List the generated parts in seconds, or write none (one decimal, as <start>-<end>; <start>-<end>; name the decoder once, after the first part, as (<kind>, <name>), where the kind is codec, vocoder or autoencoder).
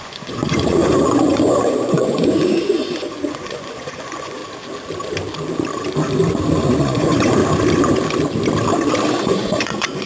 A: 0.0-4.4 (vocoder, Vocos); 6.8-7.4; 9.1-10.1